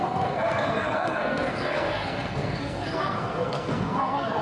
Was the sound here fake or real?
fake